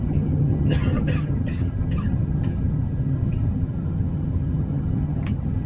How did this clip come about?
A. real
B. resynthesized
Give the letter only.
B